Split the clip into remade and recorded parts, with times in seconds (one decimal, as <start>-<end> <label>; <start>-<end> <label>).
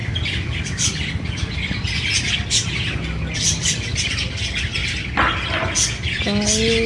0.0-6.9 recorded